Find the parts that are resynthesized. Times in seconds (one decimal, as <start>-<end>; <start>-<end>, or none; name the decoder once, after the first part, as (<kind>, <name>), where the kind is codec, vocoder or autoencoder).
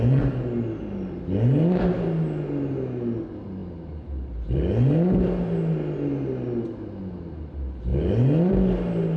none